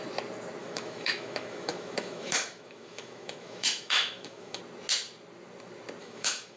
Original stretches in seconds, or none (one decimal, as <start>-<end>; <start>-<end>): 0.0-0.6; 4.6-6.0